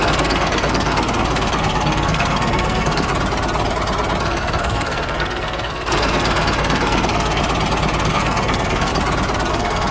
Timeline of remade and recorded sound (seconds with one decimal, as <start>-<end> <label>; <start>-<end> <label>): 0.0-3.1 remade; 3.1-4.2 recorded; 4.2-7.4 remade; 7.4-8.1 recorded; 8.1-8.9 remade; 8.9-9.5 recorded; 9.5-9.9 remade